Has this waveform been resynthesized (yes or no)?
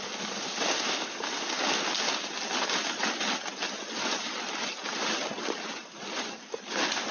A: no